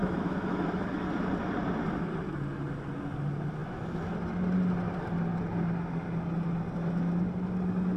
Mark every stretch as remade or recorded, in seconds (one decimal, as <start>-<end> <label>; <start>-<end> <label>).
0.0-1.1 remade; 1.1-8.0 recorded